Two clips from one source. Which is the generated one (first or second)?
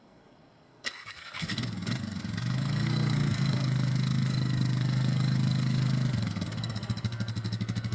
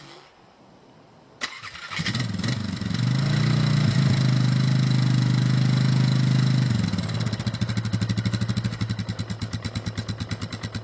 first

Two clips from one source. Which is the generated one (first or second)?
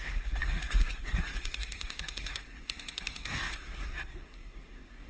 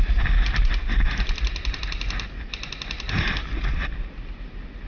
first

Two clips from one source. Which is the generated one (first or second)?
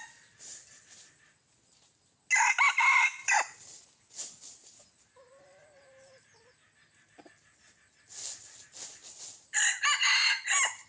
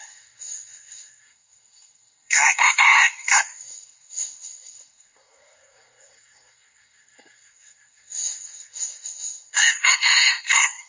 second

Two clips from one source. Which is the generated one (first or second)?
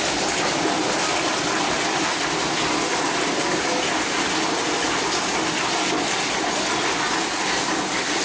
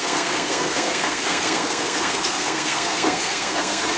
second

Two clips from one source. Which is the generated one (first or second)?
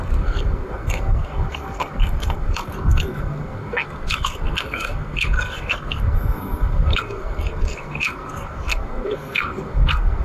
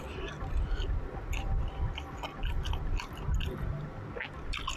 first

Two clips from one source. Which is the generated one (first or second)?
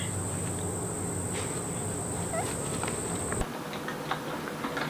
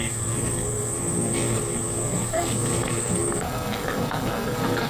second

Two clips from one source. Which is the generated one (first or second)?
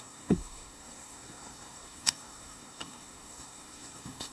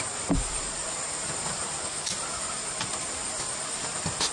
first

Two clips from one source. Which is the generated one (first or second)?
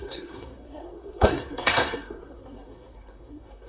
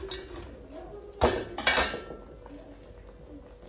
first